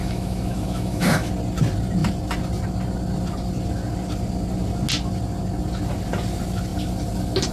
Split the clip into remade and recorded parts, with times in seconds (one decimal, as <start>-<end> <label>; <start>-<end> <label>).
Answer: 0.0-1.3 remade; 1.3-7.5 recorded